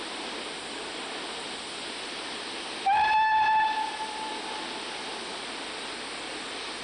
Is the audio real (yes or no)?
yes